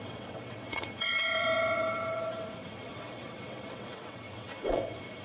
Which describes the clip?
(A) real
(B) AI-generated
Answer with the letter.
B